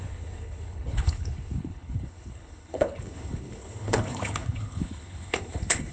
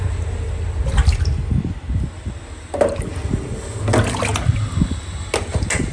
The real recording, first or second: second